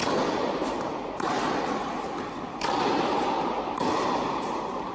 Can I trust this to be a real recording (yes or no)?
yes